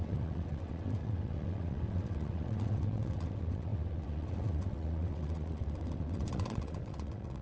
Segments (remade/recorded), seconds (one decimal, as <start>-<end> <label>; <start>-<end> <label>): 0.0-7.4 remade